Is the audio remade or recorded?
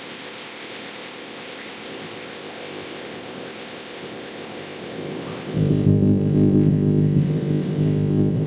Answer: remade